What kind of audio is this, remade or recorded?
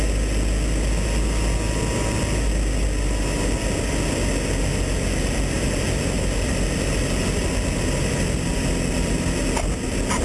recorded